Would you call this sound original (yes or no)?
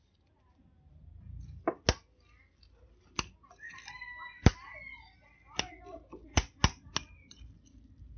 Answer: yes